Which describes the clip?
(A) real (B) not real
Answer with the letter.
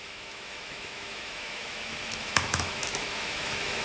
B